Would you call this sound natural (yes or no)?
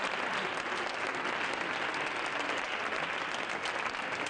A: yes